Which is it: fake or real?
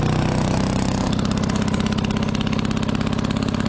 real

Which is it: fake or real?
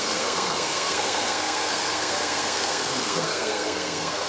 fake